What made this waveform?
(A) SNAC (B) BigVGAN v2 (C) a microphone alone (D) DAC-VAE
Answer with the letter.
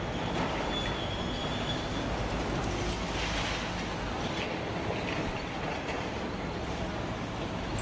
C